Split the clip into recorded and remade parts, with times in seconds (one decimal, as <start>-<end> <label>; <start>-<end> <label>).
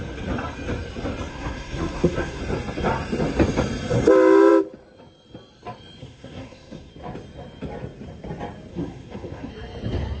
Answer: 0.0-1.3 recorded; 1.3-2.4 remade; 2.4-6.0 recorded; 6.0-6.9 remade; 6.9-8.7 recorded; 8.7-9.5 remade; 9.5-10.2 recorded